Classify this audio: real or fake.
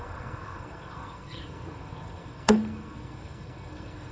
fake